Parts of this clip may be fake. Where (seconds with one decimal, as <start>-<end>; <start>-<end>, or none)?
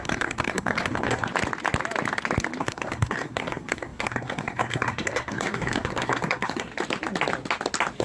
0.0-1.3; 2.6-6.7